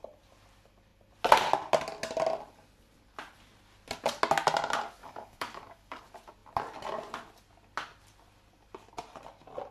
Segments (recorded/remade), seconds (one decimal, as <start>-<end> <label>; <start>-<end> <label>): 0.0-5.0 recorded; 5.0-6.0 remade; 6.0-9.7 recorded